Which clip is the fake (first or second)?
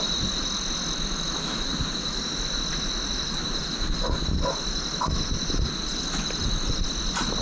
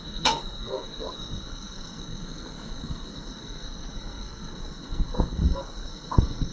second